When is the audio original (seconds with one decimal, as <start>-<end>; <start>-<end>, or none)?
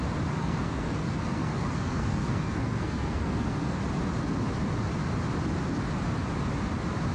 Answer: 0.0-0.4; 3.8-7.1